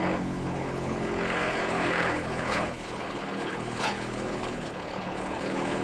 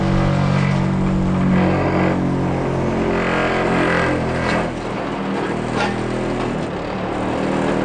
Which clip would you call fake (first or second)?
first